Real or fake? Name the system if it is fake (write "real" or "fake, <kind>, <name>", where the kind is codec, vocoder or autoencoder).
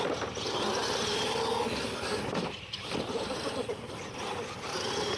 real